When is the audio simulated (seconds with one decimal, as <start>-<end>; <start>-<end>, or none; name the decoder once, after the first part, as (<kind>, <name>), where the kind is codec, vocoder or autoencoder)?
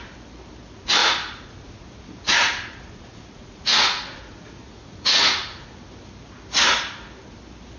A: 1.0-5.7 (vocoder, Vocos)